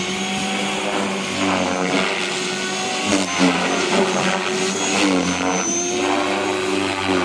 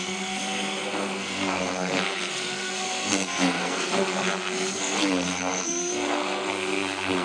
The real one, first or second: first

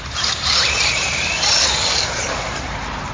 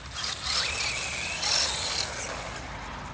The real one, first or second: second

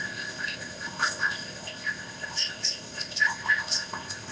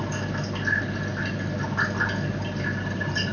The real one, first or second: second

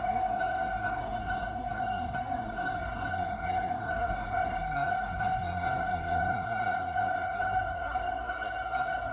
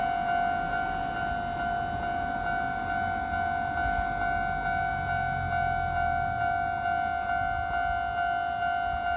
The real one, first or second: second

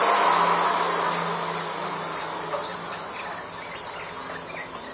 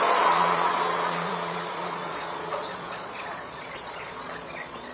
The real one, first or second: first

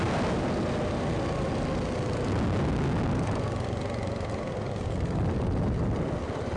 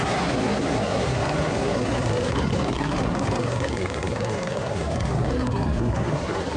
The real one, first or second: first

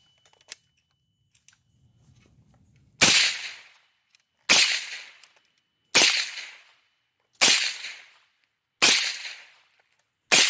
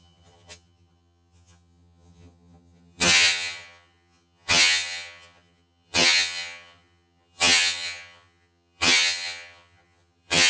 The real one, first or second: first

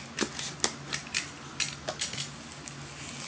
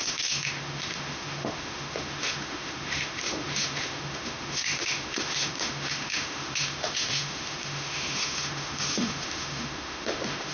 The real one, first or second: first